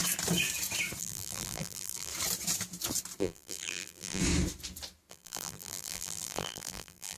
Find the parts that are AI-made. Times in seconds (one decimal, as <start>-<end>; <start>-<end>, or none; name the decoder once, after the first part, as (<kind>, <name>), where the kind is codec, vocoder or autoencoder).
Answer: 1.0-2.1 (vocoder, BigVGAN v2); 3.2-4.2; 5.1-7.2

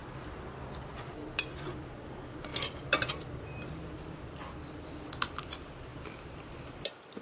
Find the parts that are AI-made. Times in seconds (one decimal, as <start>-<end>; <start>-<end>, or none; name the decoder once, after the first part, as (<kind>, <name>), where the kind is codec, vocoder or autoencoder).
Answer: 0.0-2.5 (vocoder, BigVGAN v2); 3.1-7.2

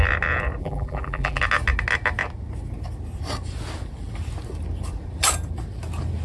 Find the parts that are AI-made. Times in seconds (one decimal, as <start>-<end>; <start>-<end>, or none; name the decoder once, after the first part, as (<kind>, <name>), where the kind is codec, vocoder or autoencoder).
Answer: 0.6-1.4 (vocoder, BigVGAN v2)

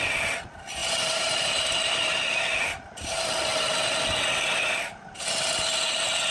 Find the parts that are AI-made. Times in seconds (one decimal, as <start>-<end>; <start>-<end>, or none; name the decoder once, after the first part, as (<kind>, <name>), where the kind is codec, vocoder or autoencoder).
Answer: 0.8-2.4 (vocoder, BigVGAN v2)

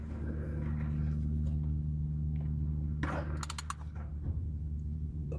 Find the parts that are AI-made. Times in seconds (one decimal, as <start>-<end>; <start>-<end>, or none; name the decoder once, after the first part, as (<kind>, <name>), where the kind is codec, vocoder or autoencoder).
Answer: 4.1-5.4 (vocoder, BigVGAN v2)

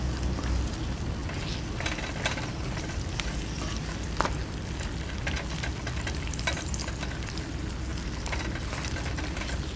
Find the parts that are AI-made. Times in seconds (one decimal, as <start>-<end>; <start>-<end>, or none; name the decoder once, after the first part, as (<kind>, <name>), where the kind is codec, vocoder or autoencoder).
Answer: none